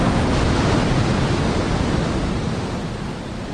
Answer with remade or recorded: recorded